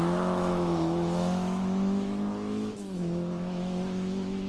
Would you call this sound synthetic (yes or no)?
yes